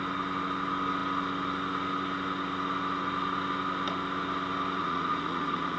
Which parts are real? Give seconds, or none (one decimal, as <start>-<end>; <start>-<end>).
0.0-4.8